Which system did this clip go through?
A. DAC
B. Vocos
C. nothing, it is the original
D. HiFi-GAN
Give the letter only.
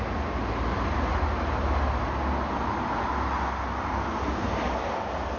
C